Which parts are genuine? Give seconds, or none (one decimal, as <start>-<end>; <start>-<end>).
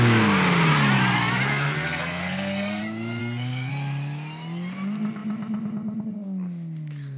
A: 0.0-1.5; 2.8-3.2; 3.7-7.2